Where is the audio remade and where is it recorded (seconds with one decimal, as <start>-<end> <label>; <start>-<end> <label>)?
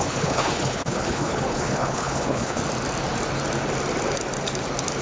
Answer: 0.0-2.6 remade; 2.6-5.0 recorded